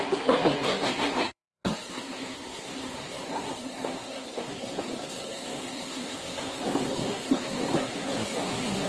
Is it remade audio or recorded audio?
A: remade